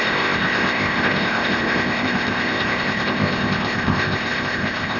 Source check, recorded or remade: remade